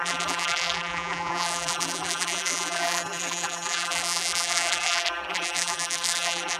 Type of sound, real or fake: fake